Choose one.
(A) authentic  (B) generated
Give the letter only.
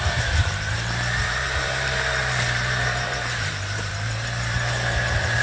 B